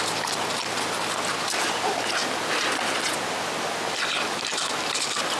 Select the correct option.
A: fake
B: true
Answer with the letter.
B